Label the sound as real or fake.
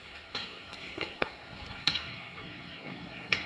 fake